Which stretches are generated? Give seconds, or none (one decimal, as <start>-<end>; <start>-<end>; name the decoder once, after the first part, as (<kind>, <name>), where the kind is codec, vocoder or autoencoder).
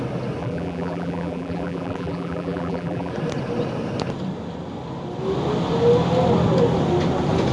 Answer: 0.4-3.1 (vocoder, BigVGAN v2)